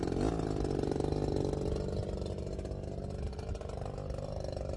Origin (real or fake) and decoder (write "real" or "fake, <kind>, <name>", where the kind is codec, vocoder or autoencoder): real